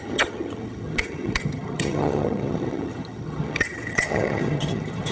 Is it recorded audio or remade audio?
remade